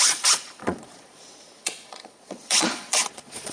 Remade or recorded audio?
remade